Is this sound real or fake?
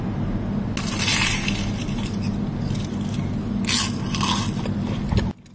real